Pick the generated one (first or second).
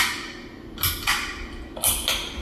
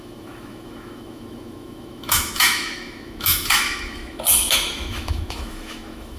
second